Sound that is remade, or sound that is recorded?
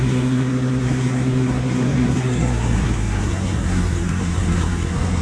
remade